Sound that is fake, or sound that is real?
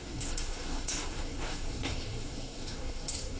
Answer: fake